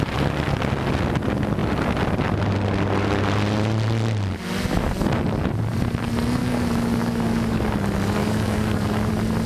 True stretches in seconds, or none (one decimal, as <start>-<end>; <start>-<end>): 0.0-6.4; 7.6-8.2; 9.1-9.5